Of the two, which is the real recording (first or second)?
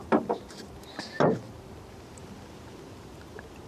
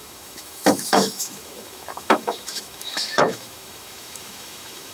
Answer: first